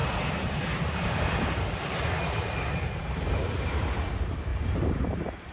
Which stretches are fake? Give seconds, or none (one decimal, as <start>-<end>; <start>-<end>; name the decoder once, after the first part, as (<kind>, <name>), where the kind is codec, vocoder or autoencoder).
0.0-3.3 (vocoder, BigVGAN v2); 4.5-5.5